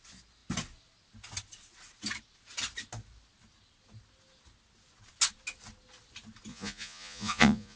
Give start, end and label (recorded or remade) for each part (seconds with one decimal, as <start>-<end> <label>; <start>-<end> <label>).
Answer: 0.0-6.5 recorded; 6.5-7.8 remade